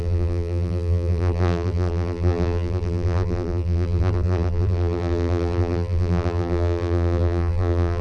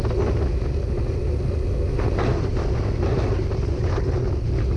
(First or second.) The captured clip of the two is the second